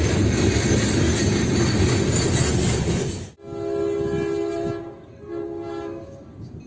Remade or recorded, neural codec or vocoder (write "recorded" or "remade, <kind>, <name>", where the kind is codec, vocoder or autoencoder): recorded